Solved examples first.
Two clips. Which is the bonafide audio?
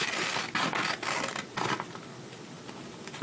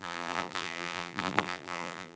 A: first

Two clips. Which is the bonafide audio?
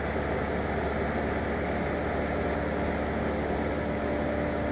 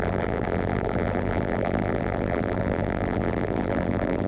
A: first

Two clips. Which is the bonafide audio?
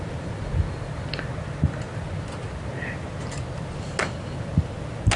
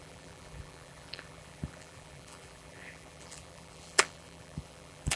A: first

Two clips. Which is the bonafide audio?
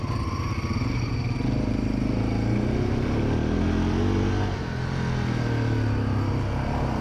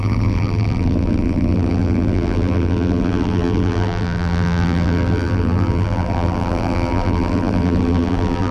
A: first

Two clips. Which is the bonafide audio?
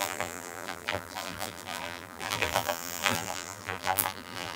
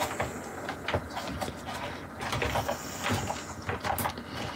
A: second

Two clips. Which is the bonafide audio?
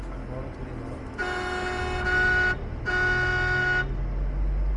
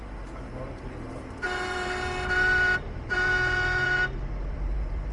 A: first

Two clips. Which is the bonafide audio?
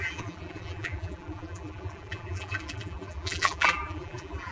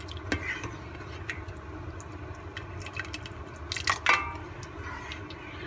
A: second